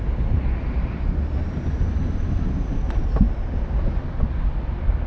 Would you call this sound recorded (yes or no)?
yes